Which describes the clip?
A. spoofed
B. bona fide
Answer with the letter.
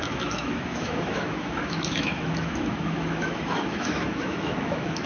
A